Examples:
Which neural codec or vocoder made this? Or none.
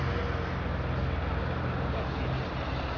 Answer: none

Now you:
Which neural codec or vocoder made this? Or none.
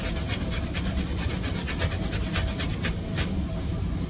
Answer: none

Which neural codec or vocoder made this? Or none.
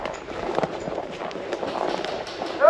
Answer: vocoder, BigVGAN v2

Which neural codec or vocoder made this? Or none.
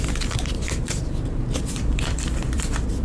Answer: vocoder, BigVGAN v2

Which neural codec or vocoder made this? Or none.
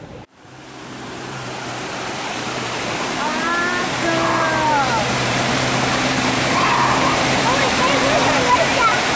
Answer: vocoder, BigVGAN v2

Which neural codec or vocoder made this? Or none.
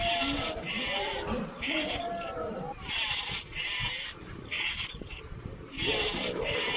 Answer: vocoder, BigVGAN v2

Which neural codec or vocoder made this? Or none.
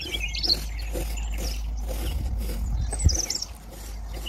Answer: none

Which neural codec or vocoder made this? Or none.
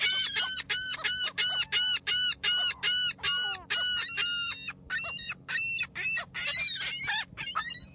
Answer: none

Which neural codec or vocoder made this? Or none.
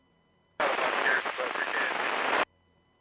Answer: vocoder, BigVGAN v2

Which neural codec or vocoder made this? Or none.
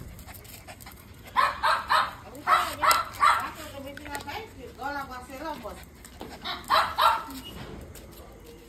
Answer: none